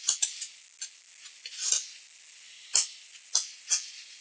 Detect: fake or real real